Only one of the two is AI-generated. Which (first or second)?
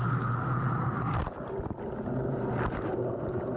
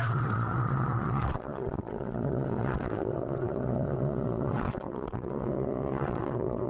second